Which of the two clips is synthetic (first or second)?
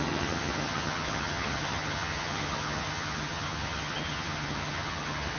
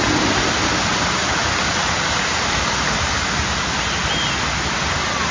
first